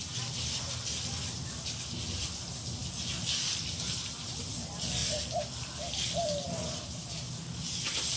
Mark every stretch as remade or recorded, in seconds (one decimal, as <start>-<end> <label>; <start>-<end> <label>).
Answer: 0.0-8.2 recorded